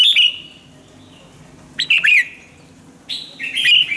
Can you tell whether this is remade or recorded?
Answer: recorded